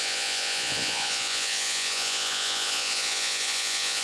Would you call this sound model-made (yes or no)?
yes